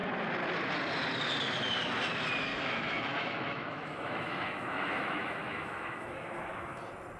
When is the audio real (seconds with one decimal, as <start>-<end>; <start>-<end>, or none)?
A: 0.0-2.5; 6.8-7.2